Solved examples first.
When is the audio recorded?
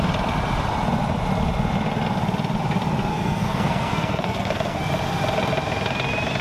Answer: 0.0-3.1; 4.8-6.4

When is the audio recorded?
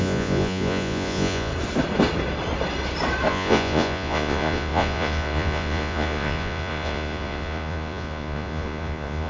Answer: 1.5-3.3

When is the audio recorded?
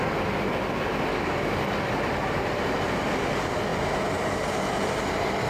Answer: 0.0-1.1; 2.0-5.5